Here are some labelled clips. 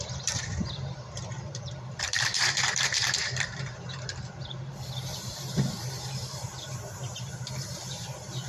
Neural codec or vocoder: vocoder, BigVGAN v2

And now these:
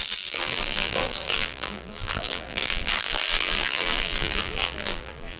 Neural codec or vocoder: vocoder, BigVGAN v2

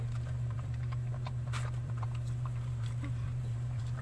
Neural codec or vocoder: vocoder, BigVGAN v2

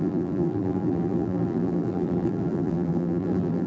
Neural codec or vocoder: vocoder, BigVGAN v2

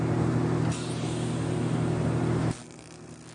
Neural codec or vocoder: none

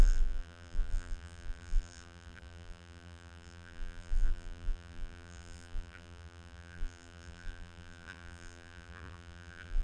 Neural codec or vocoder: vocoder, BigVGAN v2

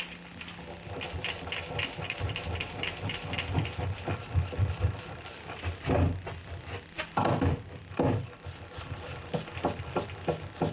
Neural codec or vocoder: none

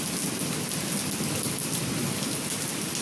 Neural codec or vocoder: none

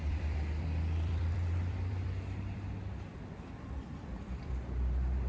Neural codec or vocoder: vocoder, BigVGAN v2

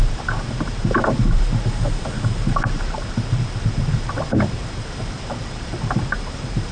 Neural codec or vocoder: vocoder, BigVGAN v2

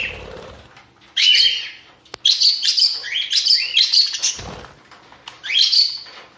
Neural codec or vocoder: none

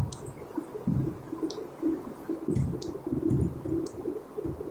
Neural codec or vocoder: none